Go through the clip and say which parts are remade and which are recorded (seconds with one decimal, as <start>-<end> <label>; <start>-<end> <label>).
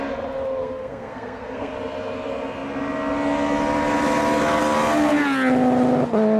0.0-0.6 recorded; 0.6-1.7 remade; 1.7-6.4 recorded